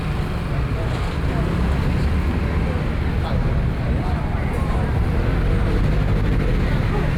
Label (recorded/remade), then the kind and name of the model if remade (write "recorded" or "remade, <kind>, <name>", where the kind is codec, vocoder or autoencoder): recorded